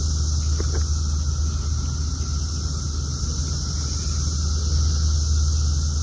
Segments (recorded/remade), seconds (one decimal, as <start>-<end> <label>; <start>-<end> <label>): 0.0-6.0 recorded